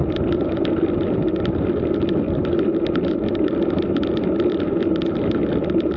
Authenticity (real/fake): real